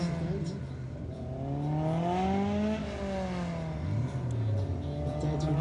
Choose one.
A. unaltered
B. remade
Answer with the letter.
A